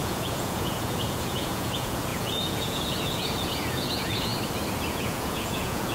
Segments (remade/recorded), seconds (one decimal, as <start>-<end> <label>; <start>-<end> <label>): 0.0-4.3 remade; 4.3-4.9 recorded; 4.9-5.9 remade